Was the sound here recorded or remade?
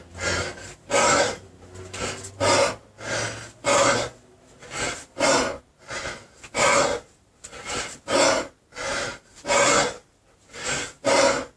recorded